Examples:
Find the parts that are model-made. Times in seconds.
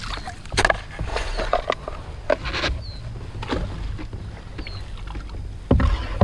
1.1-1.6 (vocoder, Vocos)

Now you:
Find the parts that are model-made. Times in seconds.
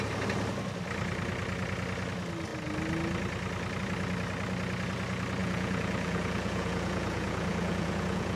5.4-8.4 (vocoder, Vocos)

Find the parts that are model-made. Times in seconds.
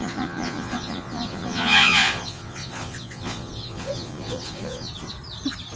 0.0-4.9 (vocoder, Vocos)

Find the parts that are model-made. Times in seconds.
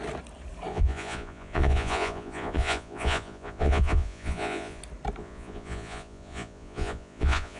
0.7-4.8 (vocoder, Vocos); 5.2-7.6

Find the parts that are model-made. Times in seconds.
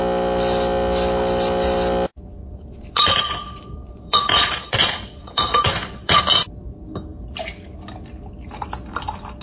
2.4-6.2 (vocoder, Vocos)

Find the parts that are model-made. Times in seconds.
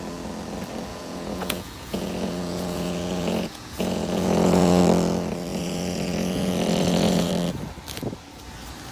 0.9-4.8 (vocoder, Vocos); 5.5-7.3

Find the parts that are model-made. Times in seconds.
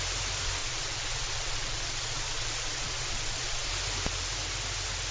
0.6-3.7 (vocoder, Vocos)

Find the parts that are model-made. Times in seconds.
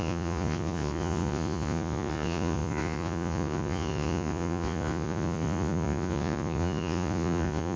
0.0-7.8 (vocoder, Vocos)